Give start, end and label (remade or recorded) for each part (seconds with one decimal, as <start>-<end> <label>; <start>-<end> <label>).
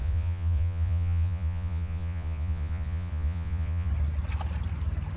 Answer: 0.0-3.9 remade; 3.9-5.2 recorded